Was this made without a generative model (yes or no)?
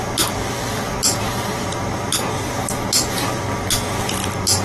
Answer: yes